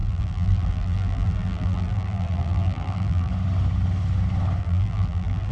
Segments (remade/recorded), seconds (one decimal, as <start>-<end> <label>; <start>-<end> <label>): 0.0-3.3 remade; 3.3-4.6 recorded; 4.6-5.5 remade